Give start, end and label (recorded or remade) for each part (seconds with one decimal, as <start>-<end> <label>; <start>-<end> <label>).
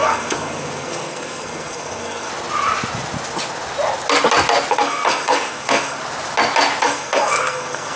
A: 0.0-2.3 remade; 2.3-4.7 recorded; 4.7-6.0 remade; 6.0-6.8 recorded; 6.8-8.0 remade